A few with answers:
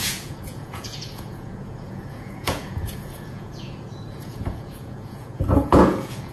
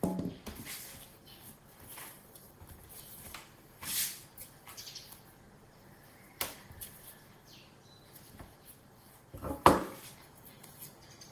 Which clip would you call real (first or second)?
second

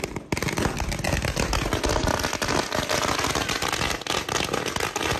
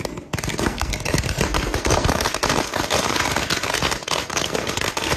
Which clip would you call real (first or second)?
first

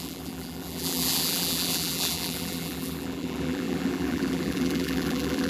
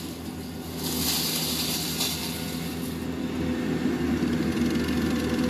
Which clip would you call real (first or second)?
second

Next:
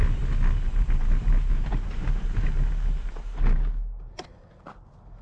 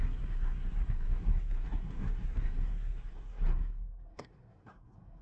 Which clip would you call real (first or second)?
first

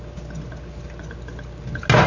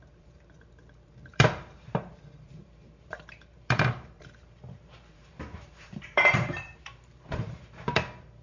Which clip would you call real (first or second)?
first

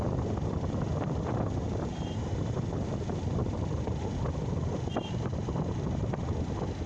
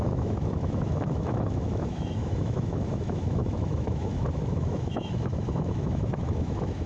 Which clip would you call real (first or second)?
first